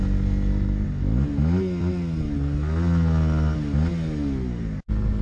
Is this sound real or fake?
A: real